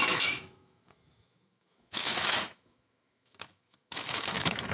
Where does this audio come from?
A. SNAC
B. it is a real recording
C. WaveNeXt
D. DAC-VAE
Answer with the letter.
D